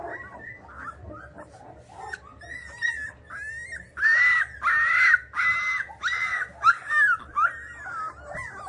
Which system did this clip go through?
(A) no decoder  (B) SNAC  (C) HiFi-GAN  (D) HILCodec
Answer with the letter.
A